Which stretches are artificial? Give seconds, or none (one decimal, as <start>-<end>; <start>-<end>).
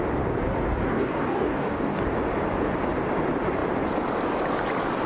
0.9-2.0